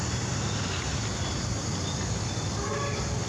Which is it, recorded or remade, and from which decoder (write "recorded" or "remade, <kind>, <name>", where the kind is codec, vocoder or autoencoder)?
recorded